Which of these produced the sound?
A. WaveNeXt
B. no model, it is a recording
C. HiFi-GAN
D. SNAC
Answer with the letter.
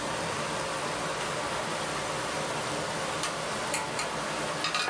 B